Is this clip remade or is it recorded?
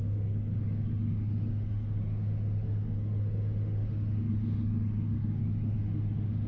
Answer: remade